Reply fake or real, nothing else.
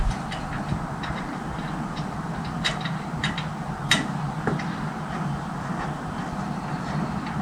real